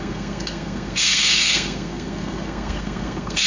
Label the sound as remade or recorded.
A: remade